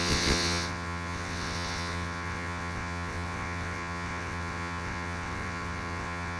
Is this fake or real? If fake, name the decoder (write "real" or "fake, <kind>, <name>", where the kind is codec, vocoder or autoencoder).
fake, vocoder, WaveNeXt